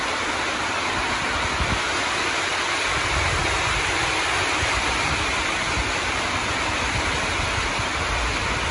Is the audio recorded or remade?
recorded